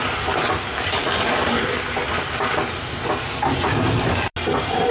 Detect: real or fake real